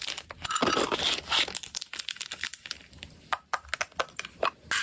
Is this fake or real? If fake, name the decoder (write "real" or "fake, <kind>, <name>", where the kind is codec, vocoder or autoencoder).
real